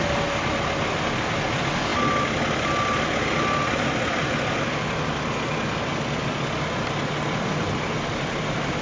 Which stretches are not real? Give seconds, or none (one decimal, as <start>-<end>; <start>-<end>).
none